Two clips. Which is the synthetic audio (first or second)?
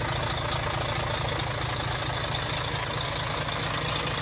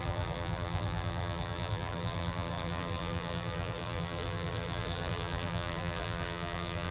second